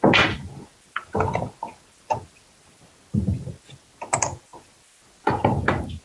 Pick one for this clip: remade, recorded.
recorded